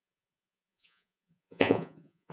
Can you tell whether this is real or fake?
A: fake